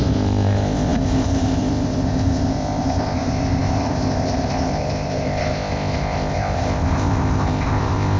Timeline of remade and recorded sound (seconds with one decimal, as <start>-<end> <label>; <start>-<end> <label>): 0.0-8.2 remade